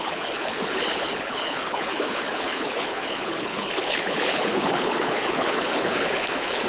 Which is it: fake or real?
fake